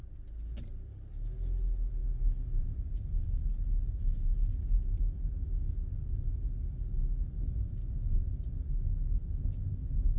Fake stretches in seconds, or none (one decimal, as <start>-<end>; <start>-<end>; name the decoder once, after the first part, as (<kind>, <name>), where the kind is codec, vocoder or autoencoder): 2.0-2.6 (autoencoder, DAC-VAE)